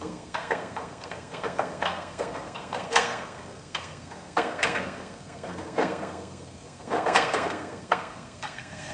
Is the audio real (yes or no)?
no